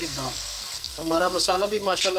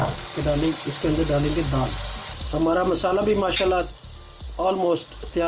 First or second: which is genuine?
second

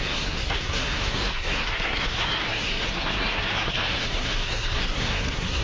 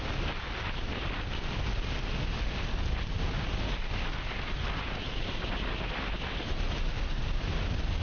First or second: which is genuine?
second